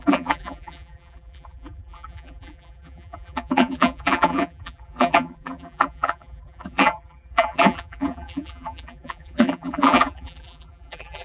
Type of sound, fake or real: fake